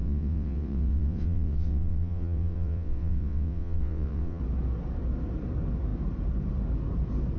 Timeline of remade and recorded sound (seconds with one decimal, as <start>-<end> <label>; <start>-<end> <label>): 0.0-4.4 remade; 4.4-7.4 recorded